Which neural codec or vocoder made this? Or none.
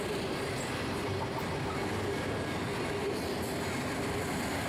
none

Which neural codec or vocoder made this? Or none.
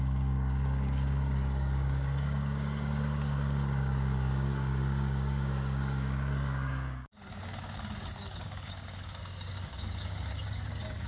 codec, DAC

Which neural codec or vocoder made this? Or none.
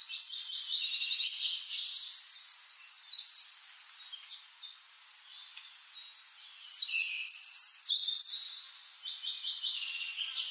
none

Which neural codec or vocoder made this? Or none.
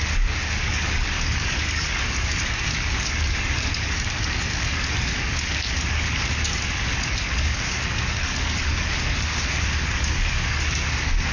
codec, DAC